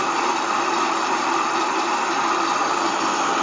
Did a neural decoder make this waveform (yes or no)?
no